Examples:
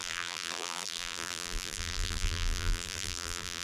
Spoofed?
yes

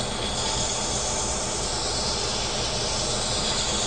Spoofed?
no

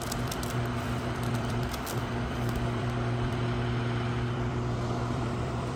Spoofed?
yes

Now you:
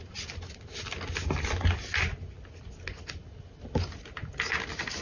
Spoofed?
no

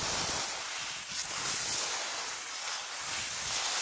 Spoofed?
no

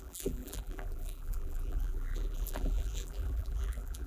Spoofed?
yes